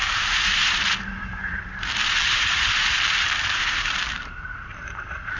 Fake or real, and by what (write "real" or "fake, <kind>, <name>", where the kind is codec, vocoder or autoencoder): fake, vocoder, BigVGAN v2